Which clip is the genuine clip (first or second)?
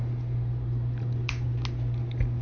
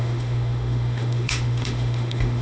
first